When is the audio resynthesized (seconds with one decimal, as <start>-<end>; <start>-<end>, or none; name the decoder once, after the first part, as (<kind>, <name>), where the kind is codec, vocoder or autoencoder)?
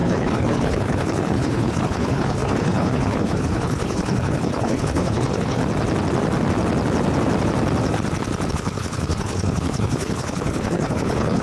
0.0-5.6 (codec, HILCodec); 8.5-11.4